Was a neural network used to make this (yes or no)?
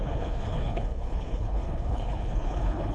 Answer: yes